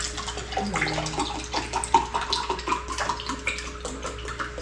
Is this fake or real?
real